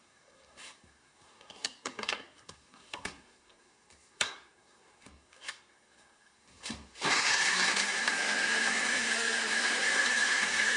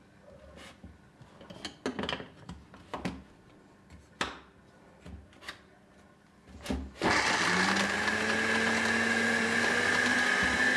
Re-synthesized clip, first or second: first